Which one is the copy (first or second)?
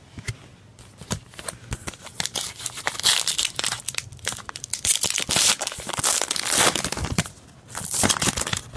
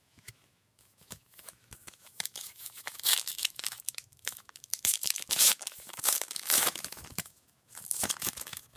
second